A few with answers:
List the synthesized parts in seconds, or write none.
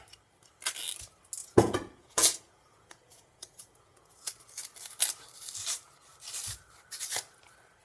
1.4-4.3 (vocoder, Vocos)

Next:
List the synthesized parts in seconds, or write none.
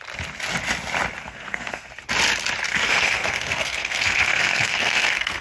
1.2-1.9 (codec, SNAC); 2.7-5.4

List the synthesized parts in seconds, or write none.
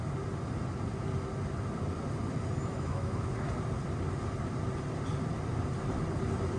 2.7-3.3 (autoencoder, DAC-VAE)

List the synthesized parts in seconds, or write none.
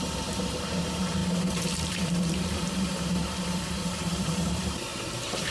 0.0-5.5 (vocoder, BigVGAN v2)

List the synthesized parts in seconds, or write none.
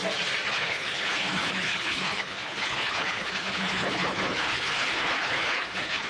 0.5-6.1 (codec, HILCodec)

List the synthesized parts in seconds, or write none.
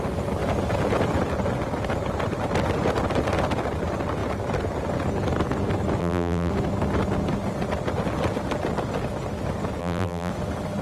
6.0-6.5 (vocoder, BigVGAN v2); 9.8-10.3